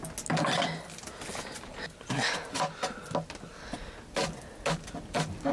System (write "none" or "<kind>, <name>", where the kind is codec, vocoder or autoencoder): none